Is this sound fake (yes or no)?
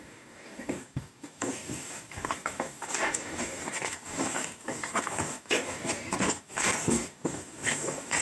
yes